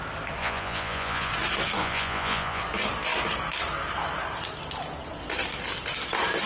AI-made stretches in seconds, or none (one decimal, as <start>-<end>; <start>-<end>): 0.4-1.3; 1.8-2.6